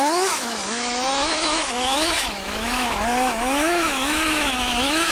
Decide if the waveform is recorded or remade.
remade